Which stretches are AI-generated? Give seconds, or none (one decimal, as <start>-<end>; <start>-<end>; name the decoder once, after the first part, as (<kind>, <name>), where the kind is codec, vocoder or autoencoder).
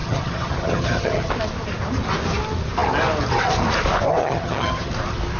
0.0-1.3 (vocoder, HiFi-GAN); 4.2-4.9